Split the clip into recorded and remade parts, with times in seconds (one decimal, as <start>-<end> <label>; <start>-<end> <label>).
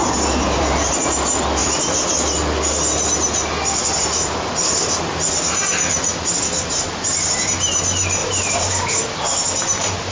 0.0-0.9 remade; 0.9-8.2 recorded; 8.2-8.7 remade; 8.7-10.1 recorded